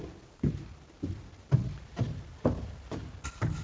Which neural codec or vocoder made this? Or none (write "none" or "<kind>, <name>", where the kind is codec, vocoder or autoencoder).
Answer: none